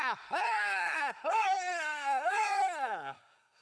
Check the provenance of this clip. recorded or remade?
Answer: remade